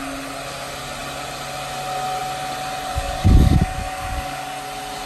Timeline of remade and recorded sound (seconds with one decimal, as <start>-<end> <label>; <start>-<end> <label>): 0.0-2.9 recorded; 2.9-4.4 remade; 4.4-5.1 recorded

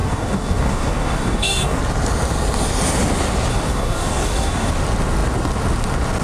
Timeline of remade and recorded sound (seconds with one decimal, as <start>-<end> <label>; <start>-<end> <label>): 0.0-1.8 remade; 1.8-3.5 recorded; 3.5-4.7 remade; 4.7-6.2 recorded

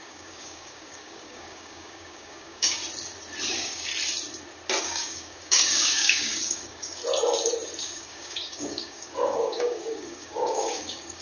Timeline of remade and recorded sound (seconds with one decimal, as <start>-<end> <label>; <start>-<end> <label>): 0.0-2.8 remade; 2.8-3.5 recorded; 3.5-3.9 remade; 3.9-4.8 recorded; 4.8-7.0 remade; 7.0-7.8 recorded; 7.8-11.2 remade